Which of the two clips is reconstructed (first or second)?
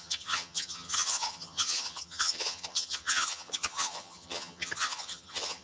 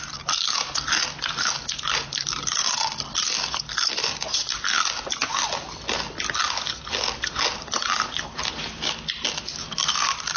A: first